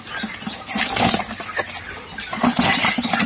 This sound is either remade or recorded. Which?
recorded